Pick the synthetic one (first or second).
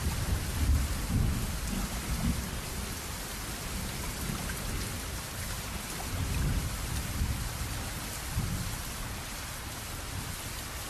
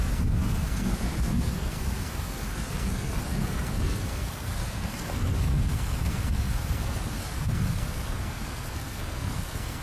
second